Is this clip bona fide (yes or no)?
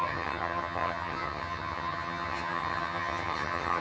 no